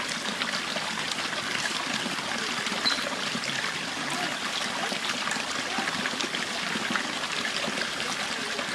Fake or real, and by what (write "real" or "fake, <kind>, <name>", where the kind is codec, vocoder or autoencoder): fake, vocoder, BigVGAN v2